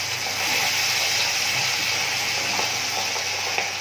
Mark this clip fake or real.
real